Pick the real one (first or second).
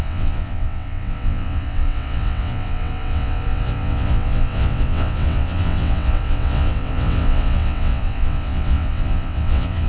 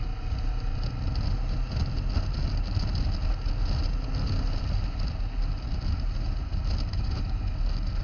second